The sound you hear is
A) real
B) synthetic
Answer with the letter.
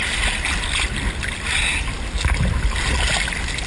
A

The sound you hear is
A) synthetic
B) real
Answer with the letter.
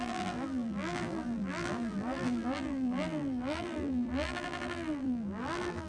A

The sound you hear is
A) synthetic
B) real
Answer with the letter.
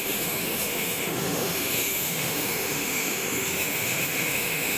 A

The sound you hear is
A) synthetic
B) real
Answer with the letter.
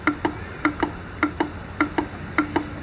B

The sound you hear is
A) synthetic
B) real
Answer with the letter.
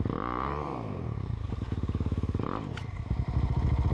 B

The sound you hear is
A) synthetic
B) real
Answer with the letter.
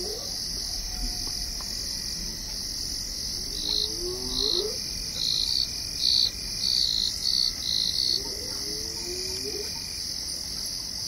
B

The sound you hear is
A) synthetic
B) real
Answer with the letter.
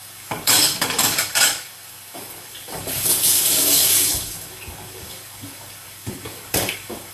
A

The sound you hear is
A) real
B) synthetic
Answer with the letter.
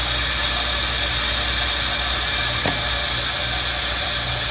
A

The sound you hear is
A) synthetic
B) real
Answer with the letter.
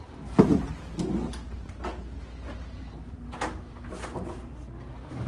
B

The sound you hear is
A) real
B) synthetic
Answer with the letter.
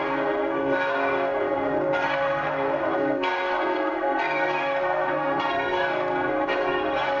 B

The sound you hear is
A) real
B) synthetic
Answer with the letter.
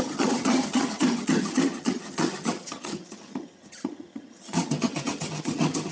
B